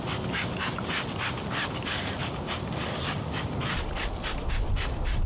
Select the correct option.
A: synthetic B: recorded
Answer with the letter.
B